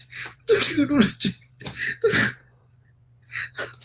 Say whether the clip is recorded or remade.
remade